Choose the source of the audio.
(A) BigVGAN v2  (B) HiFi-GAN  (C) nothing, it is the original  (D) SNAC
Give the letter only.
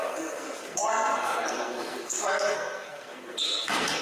D